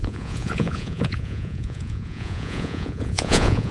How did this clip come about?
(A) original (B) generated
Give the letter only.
B